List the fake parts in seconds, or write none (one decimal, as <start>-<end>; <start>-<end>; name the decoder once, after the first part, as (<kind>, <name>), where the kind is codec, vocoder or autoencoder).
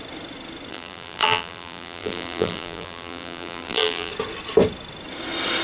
0.7-4.1 (vocoder, BigVGAN v2)